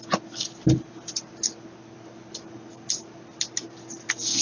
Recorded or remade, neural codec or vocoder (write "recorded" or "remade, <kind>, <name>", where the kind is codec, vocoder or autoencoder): recorded